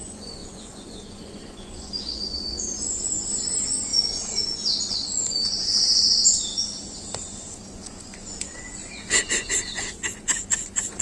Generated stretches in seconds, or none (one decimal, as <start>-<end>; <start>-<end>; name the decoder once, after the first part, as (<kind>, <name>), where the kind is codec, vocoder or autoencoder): 0.0-11.0 (vocoder, Vocos)